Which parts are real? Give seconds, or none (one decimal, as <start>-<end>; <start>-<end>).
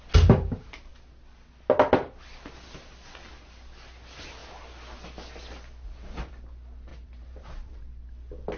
0.0-6.9; 7.8-8.6